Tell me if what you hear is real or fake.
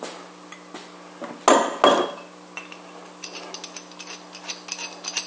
real